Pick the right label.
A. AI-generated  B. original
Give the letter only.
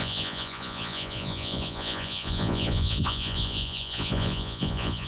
A